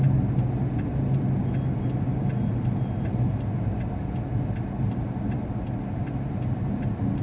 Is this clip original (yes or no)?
yes